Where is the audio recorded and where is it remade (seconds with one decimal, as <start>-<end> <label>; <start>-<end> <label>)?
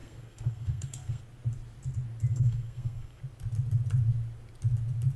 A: 0.0-1.2 remade; 1.2-2.3 recorded; 2.3-3.2 remade; 3.2-5.2 recorded